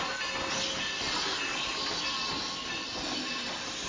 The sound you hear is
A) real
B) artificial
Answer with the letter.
A